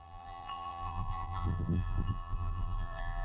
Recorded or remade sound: remade